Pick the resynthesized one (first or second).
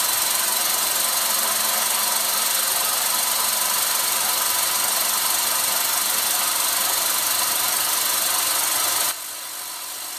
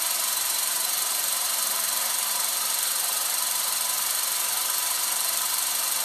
second